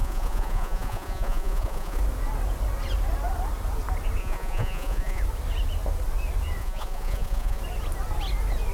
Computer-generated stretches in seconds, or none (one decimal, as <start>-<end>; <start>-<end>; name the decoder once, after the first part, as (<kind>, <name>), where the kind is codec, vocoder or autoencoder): 0.0-2.0 (vocoder, Vocos); 4.2-5.2; 6.6-7.6